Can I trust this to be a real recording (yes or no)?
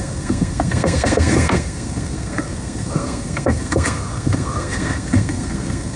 no